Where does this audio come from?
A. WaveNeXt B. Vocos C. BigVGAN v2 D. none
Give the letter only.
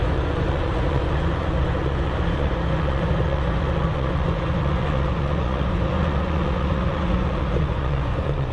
B